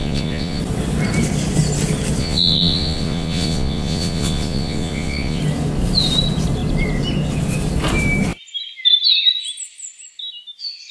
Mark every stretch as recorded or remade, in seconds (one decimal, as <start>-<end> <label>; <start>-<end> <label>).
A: 0.0-0.6 remade; 0.6-2.2 recorded; 2.2-5.4 remade; 5.4-10.9 recorded